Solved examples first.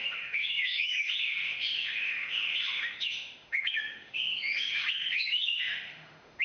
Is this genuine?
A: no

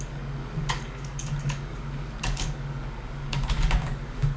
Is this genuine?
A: no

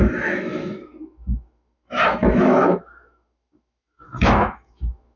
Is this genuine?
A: no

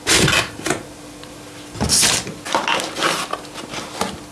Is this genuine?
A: yes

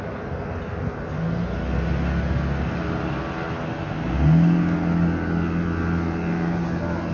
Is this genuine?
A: yes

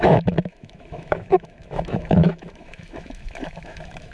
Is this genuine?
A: no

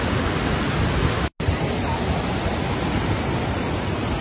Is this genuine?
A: yes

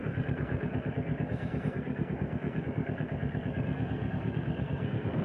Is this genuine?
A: no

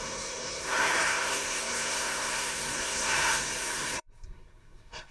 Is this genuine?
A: no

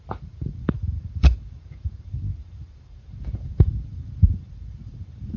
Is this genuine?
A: no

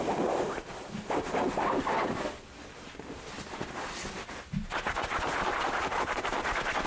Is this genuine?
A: yes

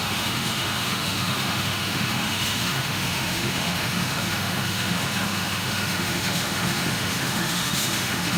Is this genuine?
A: no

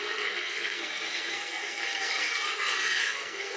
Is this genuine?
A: no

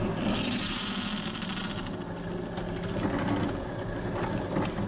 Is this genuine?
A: yes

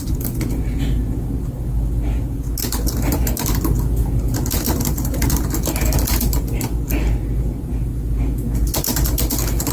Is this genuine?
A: yes